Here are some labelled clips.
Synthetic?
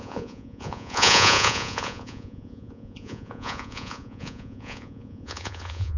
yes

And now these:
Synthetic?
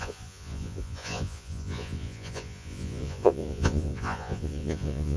yes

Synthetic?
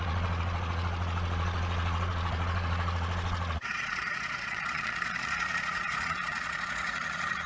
yes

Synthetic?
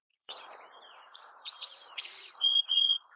yes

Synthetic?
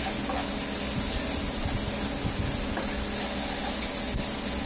no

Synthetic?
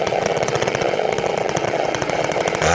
yes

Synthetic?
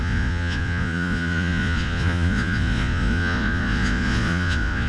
yes